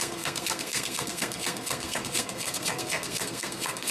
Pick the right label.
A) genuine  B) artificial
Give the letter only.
B